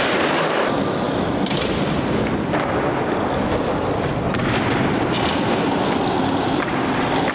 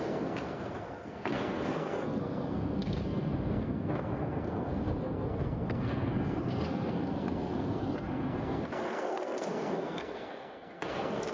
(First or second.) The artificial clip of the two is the second